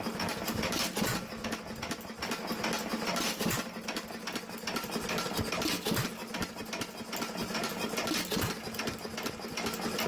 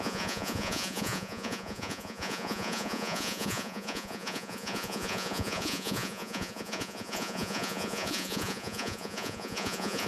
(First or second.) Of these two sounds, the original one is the first